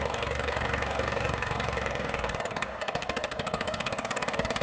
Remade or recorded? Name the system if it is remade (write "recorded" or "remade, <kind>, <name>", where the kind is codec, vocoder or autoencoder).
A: remade, codec, DAC